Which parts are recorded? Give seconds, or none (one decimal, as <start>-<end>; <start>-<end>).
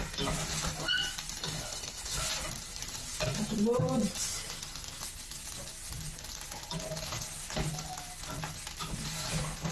0.0-1.4; 2.2-9.7